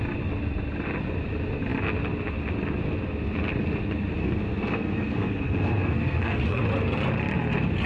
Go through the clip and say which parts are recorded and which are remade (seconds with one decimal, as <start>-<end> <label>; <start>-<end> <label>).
0.0-4.2 recorded; 4.2-6.6 remade; 6.6-7.9 recorded